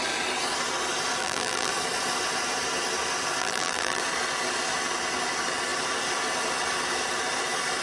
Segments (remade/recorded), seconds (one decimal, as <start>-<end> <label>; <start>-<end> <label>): 0.0-1.2 recorded; 1.2-1.7 remade; 1.7-3.4 recorded; 3.4-4.0 remade; 4.0-7.8 recorded